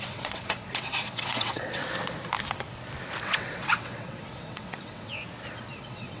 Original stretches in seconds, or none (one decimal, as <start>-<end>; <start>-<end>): 1.8-3.2; 5.2-5.7